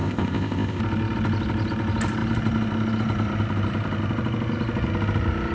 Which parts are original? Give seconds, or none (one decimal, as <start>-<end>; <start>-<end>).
0.8-5.5